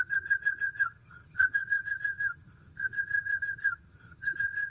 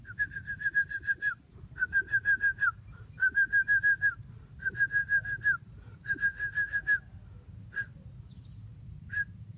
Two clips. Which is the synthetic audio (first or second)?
first